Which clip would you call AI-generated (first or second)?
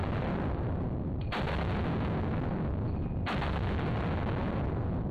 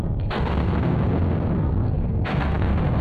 second